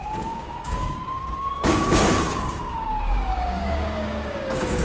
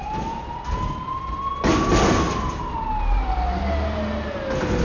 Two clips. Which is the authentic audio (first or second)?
second